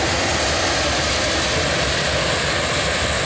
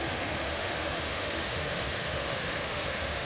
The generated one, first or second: second